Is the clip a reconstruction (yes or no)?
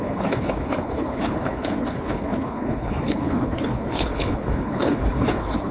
yes